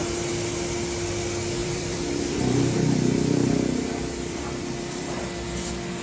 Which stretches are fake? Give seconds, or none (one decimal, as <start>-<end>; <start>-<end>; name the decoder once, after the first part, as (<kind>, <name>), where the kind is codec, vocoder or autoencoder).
1.6-5.2 (vocoder, BigVGAN v2)